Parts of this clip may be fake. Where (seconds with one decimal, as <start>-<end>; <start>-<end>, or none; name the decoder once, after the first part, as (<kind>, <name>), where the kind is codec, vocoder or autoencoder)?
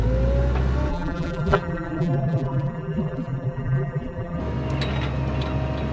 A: 0.9-4.4 (vocoder, BigVGAN v2)